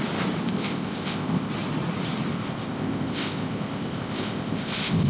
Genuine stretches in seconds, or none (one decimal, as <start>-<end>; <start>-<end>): 0.0-0.4; 1.5-2.3